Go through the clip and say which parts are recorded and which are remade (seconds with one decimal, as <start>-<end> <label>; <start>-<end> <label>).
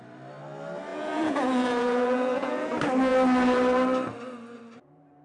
0.0-0.9 recorded; 0.9-2.7 remade; 2.7-5.2 recorded